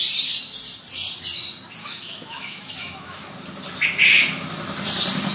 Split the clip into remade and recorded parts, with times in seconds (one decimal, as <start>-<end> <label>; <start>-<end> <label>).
0.0-1.8 recorded; 1.8-3.3 remade; 3.3-5.3 recorded